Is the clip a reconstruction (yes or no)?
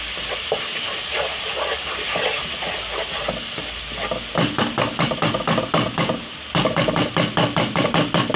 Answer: no